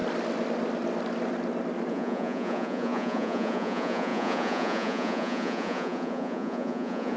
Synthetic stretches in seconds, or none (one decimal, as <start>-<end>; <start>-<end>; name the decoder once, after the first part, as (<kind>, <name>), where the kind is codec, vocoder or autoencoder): 1.9-7.2 (vocoder, Vocos)